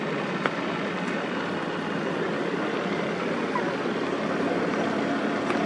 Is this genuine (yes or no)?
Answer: yes